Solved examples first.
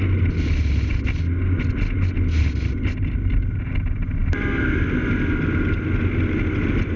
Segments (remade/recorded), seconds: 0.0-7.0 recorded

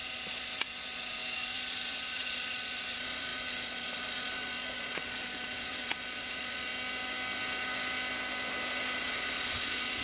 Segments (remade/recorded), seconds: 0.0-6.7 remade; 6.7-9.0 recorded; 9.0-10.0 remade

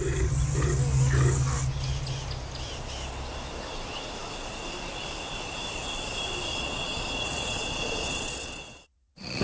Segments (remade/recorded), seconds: 0.0-6.5 recorded; 6.5-9.4 remade